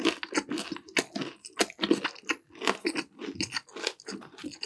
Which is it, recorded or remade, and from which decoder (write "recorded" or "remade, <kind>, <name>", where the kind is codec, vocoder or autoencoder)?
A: recorded